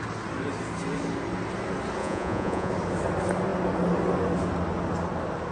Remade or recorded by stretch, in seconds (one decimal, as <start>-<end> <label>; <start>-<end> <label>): 0.0-2.0 recorded; 2.0-2.7 remade; 2.7-5.5 recorded